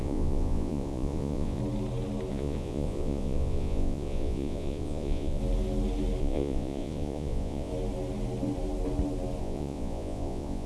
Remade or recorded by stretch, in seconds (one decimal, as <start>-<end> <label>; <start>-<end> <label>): 0.0-1.6 remade; 1.6-2.3 recorded; 2.3-5.4 remade; 5.4-6.2 recorded; 6.2-7.7 remade; 7.7-9.4 recorded; 9.4-10.7 remade